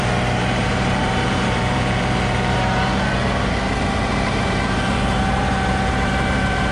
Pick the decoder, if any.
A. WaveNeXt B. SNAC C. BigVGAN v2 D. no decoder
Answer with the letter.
C